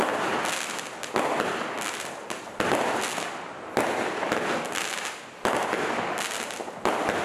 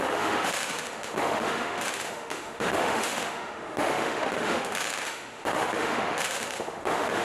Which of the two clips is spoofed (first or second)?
second